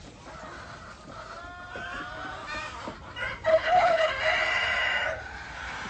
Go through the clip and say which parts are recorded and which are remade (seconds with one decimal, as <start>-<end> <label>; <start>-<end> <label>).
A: 0.0-3.5 recorded; 3.5-4.1 remade; 4.1-5.9 recorded